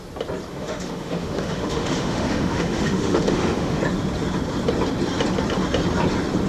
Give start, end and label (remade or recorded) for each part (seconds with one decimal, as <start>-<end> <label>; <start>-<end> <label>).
0.0-0.5 recorded; 0.5-3.8 remade; 3.8-6.5 recorded